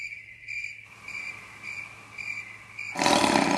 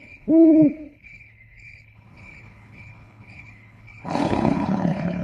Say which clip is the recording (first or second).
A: first